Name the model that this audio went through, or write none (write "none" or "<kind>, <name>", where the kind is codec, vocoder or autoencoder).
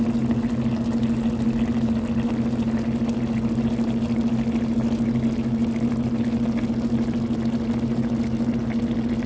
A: none